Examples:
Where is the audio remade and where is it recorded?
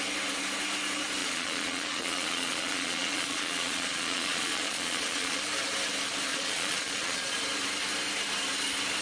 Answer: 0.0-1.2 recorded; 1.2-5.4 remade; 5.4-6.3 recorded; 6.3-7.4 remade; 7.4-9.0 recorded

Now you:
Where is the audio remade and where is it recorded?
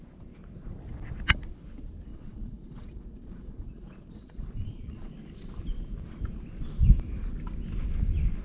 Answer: 0.0-2.1 recorded; 2.1-5.1 remade; 5.1-8.4 recorded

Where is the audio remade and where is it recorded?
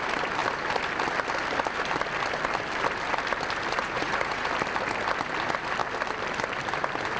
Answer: 0.0-3.8 recorded; 3.8-4.5 remade; 4.5-7.2 recorded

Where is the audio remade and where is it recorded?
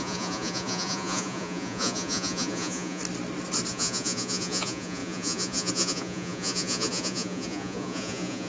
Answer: 0.0-3.0 remade; 3.0-3.7 recorded; 3.7-8.5 remade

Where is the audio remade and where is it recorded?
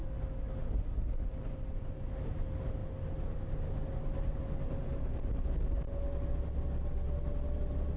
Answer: 0.0-8.0 recorded